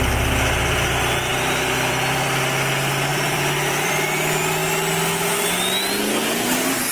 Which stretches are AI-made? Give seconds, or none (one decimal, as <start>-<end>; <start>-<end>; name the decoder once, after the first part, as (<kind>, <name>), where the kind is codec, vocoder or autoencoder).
1.3-2.4 (vocoder, BigVGAN v2); 3.1-3.9